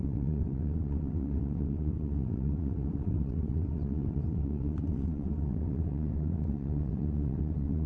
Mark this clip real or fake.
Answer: fake